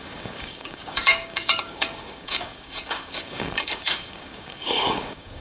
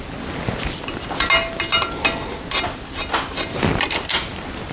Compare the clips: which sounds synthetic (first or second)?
first